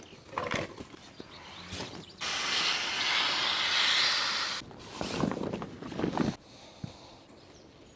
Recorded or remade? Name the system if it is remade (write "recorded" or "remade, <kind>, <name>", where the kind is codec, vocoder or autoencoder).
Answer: recorded